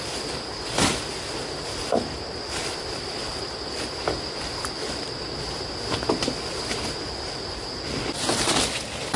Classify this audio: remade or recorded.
recorded